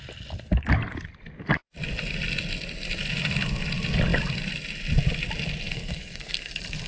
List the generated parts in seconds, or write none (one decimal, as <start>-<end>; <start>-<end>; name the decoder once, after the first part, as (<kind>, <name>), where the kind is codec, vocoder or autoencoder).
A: 5.7-6.5 (codec, SNAC)